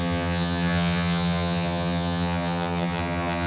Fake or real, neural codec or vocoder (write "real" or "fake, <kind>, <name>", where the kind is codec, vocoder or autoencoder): fake, vocoder, HiFi-GAN